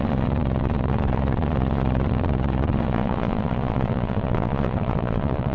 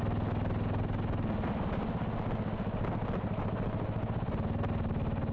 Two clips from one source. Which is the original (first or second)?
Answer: second